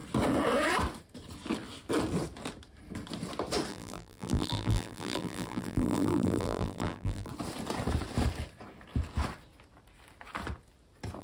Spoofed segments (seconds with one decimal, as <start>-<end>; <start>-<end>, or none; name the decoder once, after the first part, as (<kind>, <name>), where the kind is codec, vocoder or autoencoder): 3.7-7.3 (vocoder, BigVGAN v2)